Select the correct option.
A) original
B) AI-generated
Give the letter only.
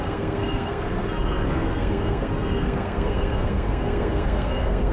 B